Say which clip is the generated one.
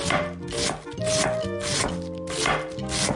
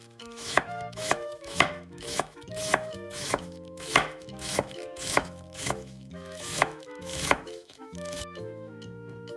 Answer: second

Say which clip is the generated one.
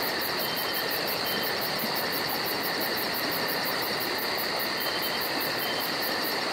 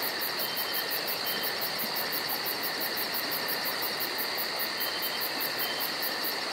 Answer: first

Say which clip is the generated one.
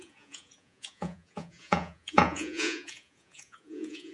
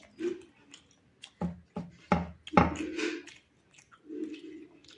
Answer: first